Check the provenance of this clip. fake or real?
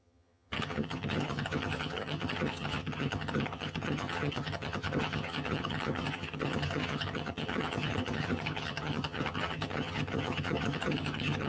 fake